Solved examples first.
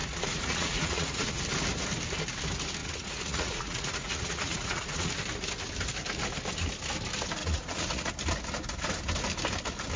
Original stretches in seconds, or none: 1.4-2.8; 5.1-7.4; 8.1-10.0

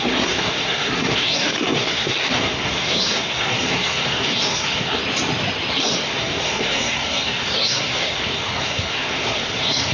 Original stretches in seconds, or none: 5.0-5.7

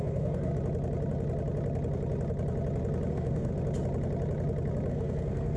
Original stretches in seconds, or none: 0.5-3.1; 3.5-4.9

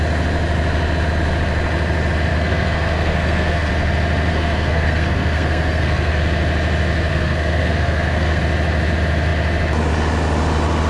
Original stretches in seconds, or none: 0.0-2.3; 3.7-4.3; 6.2-7.1; 8.4-10.9